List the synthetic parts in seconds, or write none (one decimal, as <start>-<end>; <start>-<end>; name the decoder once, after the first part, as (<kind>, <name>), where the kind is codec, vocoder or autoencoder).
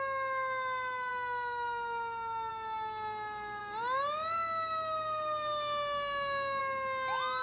none